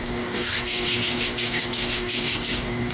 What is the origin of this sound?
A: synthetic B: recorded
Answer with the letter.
A